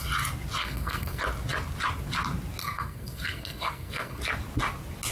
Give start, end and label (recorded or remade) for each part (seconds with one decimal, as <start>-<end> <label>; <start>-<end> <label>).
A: 0.0-0.6 recorded; 0.6-1.2 remade; 1.2-2.6 recorded; 2.6-4.2 remade; 4.2-5.1 recorded